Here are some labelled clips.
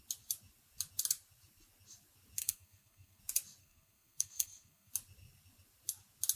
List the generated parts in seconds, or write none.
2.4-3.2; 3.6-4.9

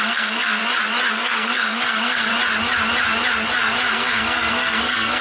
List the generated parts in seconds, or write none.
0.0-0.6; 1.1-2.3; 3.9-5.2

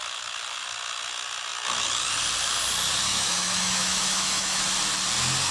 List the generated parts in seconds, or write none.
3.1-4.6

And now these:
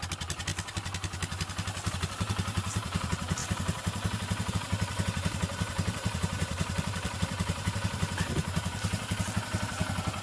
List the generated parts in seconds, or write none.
0.0-0.5; 1.9-10.2

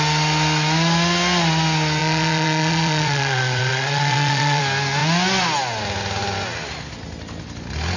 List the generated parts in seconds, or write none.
2.0-4.6

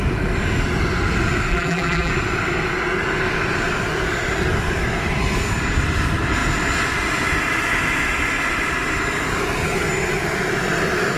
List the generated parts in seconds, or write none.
1.5-2.1